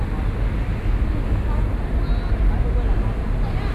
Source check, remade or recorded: recorded